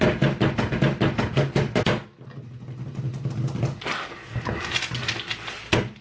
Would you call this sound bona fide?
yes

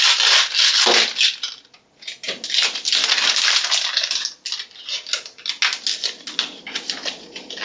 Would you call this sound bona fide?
yes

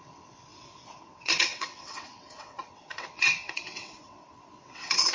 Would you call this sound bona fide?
no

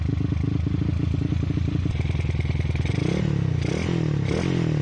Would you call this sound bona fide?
yes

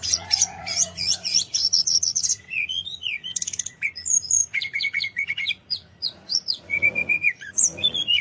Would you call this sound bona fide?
no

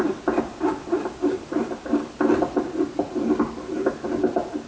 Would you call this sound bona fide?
yes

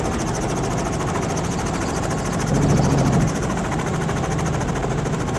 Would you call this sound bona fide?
yes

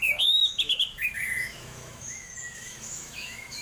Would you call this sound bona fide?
no